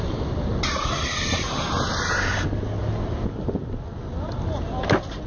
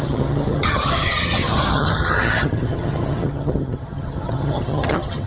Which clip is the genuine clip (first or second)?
first